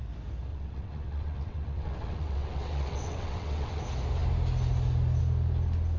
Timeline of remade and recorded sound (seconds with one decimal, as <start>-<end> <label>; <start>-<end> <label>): 0.0-0.5 recorded; 0.5-3.8 remade; 3.8-6.0 recorded

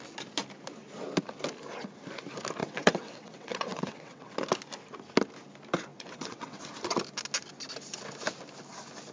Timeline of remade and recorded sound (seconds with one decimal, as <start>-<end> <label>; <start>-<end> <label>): 0.0-2.6 recorded; 2.6-4.3 remade; 4.3-5.9 recorded; 5.9-6.6 remade; 6.6-9.1 recorded

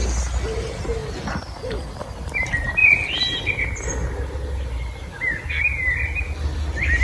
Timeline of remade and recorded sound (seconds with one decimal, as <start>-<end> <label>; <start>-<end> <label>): 0.0-7.0 recorded

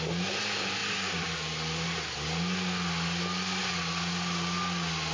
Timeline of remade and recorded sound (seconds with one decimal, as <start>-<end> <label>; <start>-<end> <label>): 0.0-5.1 recorded